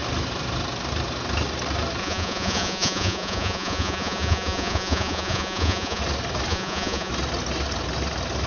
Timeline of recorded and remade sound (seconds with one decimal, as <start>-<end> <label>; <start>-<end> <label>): 0.0-2.0 recorded; 2.0-6.0 remade; 6.0-6.5 recorded; 6.5-7.1 remade; 7.1-8.5 recorded